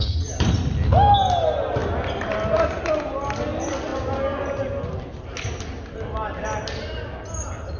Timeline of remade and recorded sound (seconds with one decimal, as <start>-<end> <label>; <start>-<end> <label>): 0.0-7.8 recorded

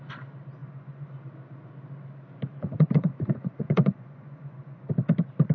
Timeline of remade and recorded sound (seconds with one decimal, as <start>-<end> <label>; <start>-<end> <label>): 0.0-0.6 recorded; 0.6-1.2 remade; 1.2-2.5 recorded; 2.5-4.9 remade; 4.9-5.5 recorded

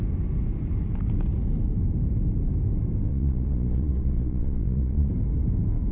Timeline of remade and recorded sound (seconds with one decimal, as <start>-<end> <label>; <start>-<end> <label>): 0.0-3.1 recorded; 3.1-5.1 remade; 5.1-5.9 recorded

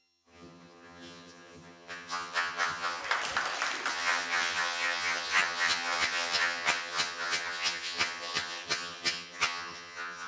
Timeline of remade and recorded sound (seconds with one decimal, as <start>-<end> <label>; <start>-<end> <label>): 0.0-3.0 remade; 3.0-3.9 recorded; 3.9-10.3 remade

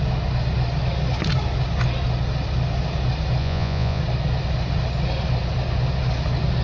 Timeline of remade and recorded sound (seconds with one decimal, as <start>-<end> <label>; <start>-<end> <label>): 0.0-3.4 recorded; 3.4-4.0 remade; 4.0-6.6 recorded